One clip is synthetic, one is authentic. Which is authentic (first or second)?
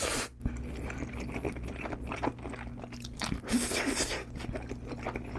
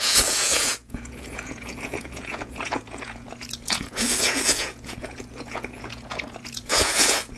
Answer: first